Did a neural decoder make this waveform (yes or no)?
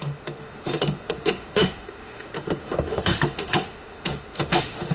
yes